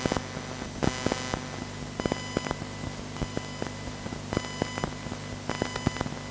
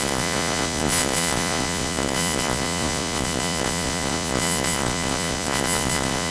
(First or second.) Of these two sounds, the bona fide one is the first